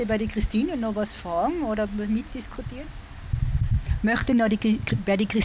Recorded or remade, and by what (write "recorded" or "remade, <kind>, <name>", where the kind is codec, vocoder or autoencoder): recorded